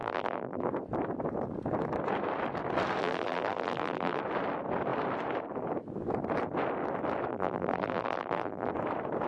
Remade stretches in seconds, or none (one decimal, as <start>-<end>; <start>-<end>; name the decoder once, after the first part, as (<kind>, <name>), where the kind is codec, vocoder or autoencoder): 0.0-0.7 (vocoder, BigVGAN v2); 3.0-4.2; 7.3-8.7